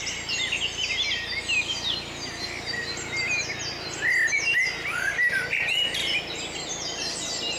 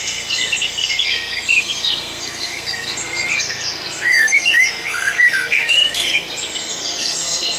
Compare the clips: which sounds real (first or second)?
first